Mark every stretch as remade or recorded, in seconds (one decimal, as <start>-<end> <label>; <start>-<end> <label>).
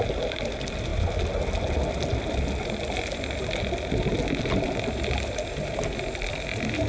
0.0-6.9 recorded